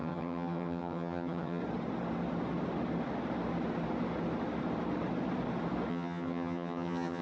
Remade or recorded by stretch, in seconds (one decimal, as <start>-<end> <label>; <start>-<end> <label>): 0.0-1.6 remade; 1.6-5.9 recorded; 5.9-7.2 remade